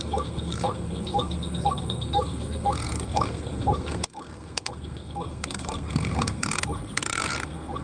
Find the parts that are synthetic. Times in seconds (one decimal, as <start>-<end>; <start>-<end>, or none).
0.0-7.8